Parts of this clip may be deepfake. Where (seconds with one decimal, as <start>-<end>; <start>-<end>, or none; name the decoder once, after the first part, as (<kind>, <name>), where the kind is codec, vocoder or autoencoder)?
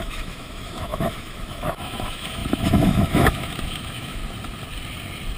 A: 0.0-4.2 (autoencoder, DAC-VAE)